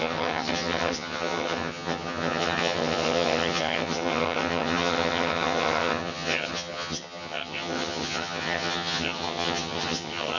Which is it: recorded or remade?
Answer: remade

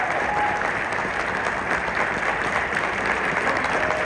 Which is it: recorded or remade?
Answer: recorded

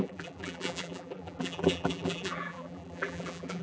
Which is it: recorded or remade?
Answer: remade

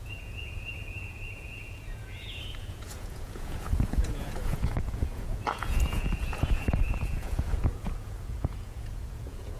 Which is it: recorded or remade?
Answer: remade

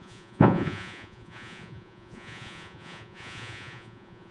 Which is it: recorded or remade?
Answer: remade